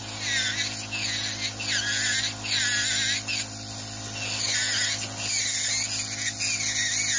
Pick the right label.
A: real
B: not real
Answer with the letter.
A